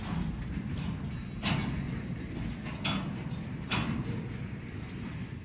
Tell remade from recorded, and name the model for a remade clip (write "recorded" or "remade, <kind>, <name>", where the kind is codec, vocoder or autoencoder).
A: recorded